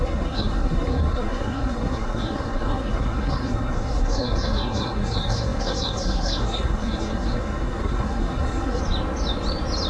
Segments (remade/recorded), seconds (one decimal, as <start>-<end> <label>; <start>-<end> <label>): 0.0-8.8 remade; 8.8-9.9 recorded